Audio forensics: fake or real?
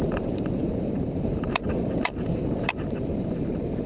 fake